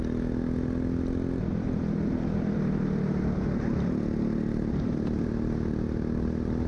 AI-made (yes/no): no